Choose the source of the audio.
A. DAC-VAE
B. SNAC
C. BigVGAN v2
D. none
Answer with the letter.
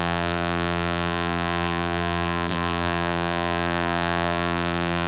C